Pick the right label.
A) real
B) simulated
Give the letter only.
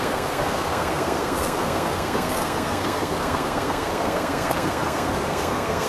B